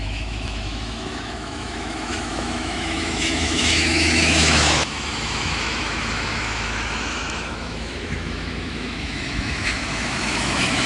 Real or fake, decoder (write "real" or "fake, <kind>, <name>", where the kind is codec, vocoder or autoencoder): fake, autoencoder, DAC-VAE